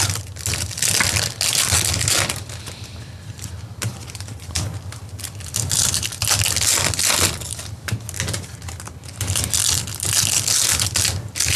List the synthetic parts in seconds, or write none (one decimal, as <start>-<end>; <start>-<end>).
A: none